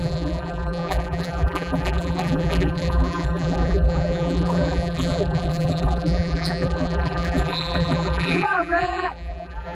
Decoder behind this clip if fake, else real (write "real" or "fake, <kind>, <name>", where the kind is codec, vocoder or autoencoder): fake, vocoder, BigVGAN v2